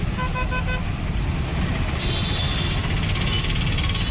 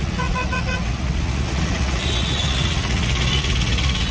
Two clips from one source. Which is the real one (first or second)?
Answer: first